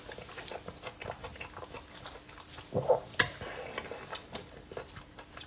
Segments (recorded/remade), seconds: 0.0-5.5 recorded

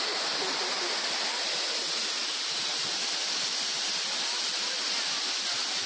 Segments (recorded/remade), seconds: 0.0-5.9 recorded

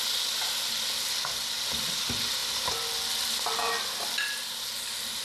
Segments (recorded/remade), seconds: 0.0-5.2 recorded

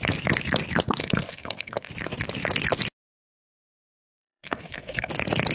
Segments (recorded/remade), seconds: 0.0-1.0 recorded; 1.0-1.9 remade; 1.9-4.1 recorded; 4.1-5.1 remade; 5.1-5.5 recorded

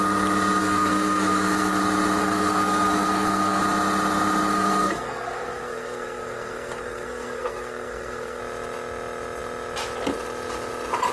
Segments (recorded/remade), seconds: 0.0-0.6 recorded; 0.6-1.8 remade; 1.8-2.2 recorded; 2.2-3.6 remade; 3.6-4.5 recorded; 4.5-8.4 remade; 8.4-11.1 recorded